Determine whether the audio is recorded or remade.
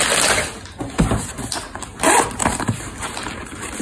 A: recorded